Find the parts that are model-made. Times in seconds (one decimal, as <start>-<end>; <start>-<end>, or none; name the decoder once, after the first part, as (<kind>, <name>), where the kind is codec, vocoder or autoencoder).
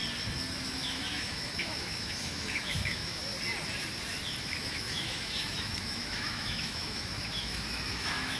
0.7-3.3 (autoencoder, DAC-VAE); 4.4-8.4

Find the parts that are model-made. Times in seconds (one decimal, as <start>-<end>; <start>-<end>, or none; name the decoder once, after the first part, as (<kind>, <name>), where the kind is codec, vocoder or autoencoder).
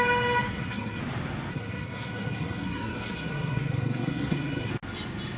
0.5-1.0 (codec, SNAC); 1.5-4.7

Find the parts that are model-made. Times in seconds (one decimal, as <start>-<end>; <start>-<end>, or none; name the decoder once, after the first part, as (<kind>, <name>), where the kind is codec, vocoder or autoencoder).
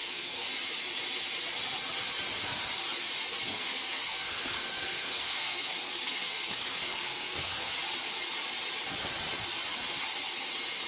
0.0-0.5 (codec, SNAC); 3.3-7.7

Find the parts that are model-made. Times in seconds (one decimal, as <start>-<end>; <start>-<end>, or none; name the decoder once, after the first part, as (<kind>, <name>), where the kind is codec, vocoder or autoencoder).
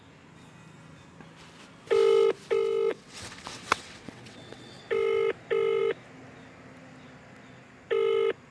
2.9-4.8 (vocoder, WaveNeXt)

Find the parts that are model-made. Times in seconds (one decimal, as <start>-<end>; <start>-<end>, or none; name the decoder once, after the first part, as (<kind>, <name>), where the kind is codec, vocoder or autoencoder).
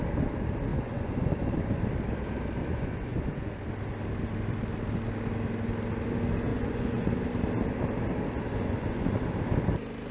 0.7-1.5 (vocoder, Vocos); 2.6-3.5; 6.5-7.1; 8.5-9.1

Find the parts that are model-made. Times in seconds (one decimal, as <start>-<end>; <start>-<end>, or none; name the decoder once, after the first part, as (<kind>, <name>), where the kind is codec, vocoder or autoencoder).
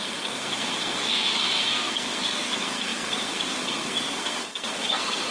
0.0-5.3 (codec, SNAC)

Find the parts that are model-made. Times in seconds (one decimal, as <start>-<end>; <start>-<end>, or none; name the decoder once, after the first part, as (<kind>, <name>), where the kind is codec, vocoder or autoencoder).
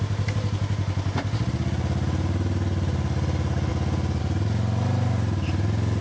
none